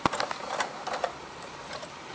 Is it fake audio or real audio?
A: real